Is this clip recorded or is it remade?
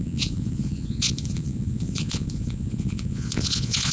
remade